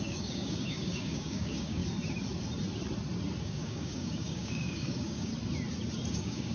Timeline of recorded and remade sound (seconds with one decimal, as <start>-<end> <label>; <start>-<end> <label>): 0.0-1.8 remade; 1.8-3.4 recorded; 3.4-5.3 remade; 5.3-6.1 recorded; 6.1-6.5 remade